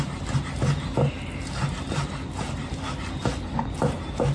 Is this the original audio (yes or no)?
yes